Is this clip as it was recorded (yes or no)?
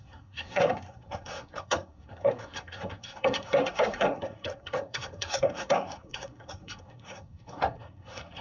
no